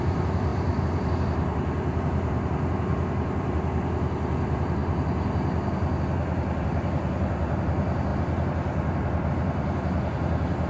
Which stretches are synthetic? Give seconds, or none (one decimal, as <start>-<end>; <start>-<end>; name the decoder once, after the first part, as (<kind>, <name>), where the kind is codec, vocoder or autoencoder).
none